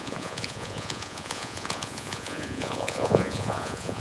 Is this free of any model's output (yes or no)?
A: no